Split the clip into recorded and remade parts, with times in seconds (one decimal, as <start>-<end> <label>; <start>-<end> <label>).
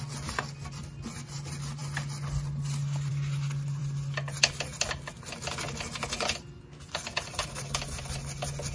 0.0-8.7 recorded